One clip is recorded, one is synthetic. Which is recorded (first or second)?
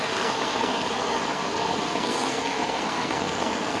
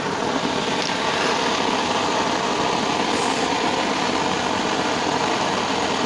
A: second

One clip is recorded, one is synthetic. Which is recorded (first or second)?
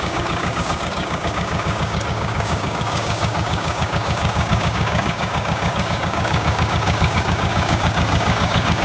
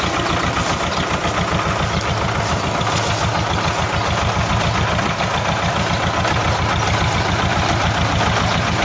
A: second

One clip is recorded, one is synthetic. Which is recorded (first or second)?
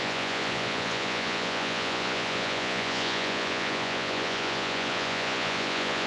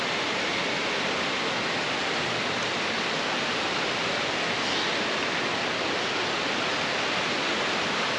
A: second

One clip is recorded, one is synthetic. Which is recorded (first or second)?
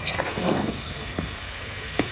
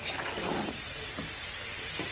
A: second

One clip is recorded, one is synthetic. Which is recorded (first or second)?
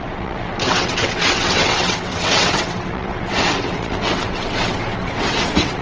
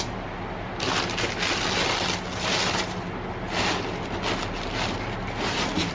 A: second